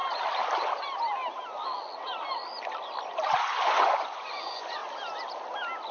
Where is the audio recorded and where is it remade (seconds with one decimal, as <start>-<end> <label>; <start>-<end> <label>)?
0.0-3.4 recorded; 3.4-4.8 remade; 4.8-5.9 recorded